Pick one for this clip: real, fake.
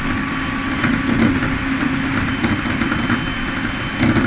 real